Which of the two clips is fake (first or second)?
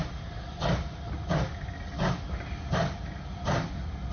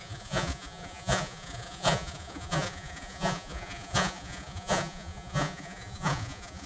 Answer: second